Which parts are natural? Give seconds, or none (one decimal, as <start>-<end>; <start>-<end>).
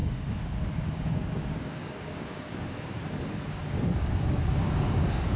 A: 3.2-3.6